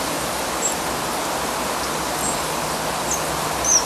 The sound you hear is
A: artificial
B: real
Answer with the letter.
B